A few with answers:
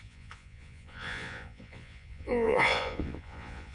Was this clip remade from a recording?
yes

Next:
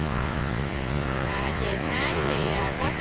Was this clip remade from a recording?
yes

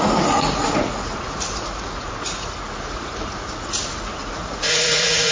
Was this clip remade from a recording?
yes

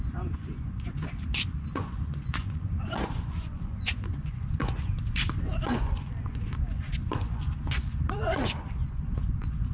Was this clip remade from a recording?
yes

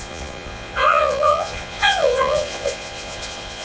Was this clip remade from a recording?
yes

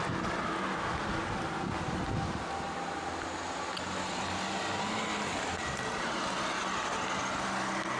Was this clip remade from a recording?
no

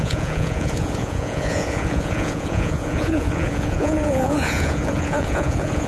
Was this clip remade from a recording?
yes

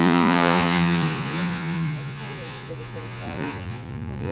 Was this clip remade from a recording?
yes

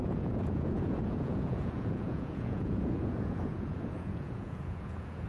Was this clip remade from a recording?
yes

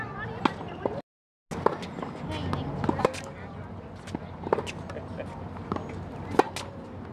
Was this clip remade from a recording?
no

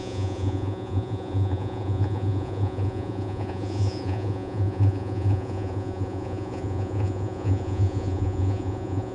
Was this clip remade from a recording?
yes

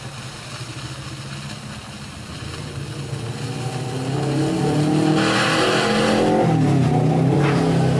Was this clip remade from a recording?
no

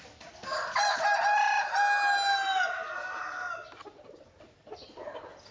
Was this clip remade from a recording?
no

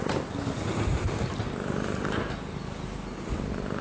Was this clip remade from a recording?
no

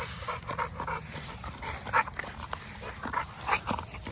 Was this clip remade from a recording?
no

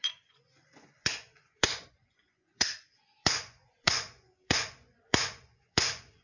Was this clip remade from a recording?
yes